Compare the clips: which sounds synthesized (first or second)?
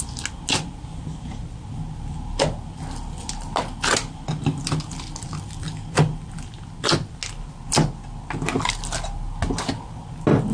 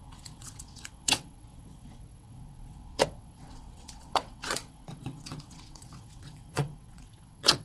second